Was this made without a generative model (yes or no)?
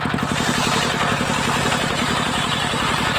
yes